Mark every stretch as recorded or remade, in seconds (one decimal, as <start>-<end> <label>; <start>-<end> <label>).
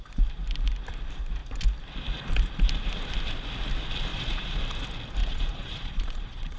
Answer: 0.0-4.1 recorded; 4.1-4.6 remade; 4.6-5.2 recorded; 5.2-6.6 remade